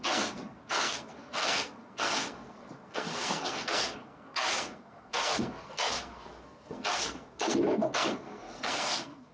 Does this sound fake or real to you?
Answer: fake